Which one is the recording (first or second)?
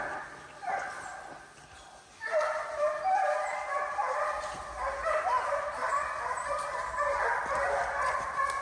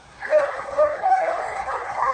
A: first